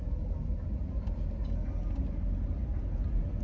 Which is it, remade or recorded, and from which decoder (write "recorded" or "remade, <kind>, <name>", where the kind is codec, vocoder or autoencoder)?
recorded